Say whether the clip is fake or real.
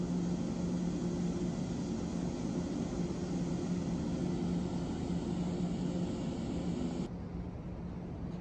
real